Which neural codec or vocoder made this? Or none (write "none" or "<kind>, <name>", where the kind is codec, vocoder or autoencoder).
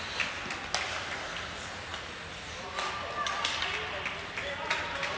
none